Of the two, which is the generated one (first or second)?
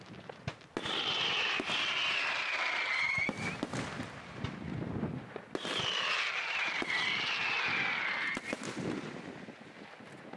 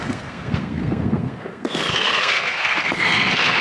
second